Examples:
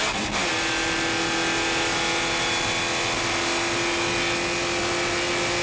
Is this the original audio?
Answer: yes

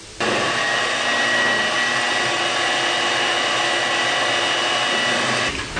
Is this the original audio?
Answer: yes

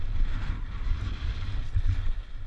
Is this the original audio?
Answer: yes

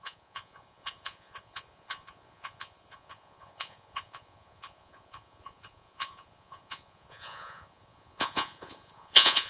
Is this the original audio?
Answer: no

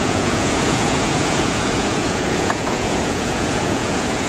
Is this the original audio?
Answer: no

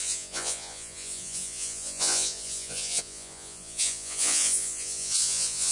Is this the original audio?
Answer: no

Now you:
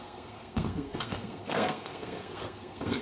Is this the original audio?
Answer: no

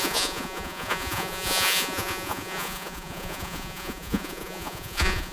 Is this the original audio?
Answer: no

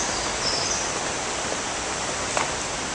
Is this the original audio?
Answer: yes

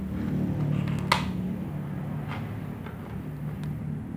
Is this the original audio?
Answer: yes